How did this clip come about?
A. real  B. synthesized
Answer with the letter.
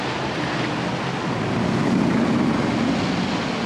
A